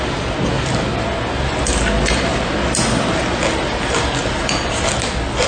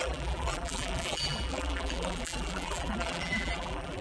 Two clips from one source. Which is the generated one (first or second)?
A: second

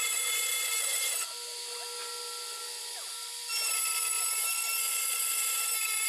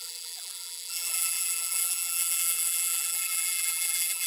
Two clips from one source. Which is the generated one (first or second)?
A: second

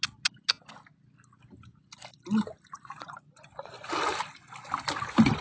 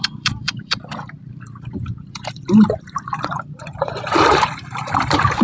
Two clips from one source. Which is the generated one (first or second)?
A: second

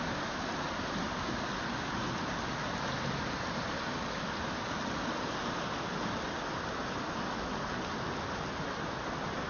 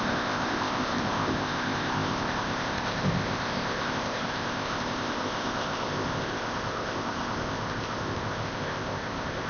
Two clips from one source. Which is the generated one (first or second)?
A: second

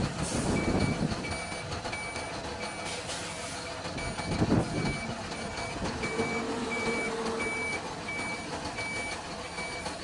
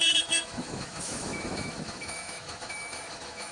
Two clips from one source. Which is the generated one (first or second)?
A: second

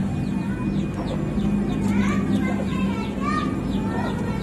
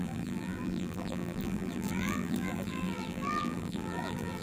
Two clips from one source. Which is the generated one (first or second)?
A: second